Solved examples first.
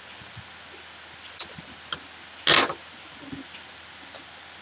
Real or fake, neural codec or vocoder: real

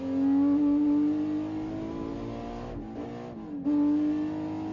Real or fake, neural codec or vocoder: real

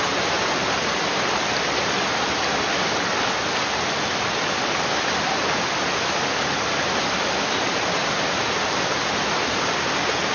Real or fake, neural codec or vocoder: real